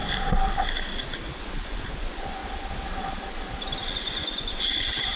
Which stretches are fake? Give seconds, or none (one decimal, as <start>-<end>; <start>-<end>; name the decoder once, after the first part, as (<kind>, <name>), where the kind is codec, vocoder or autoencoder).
1.4-2.4 (vocoder, Vocos); 3.9-5.2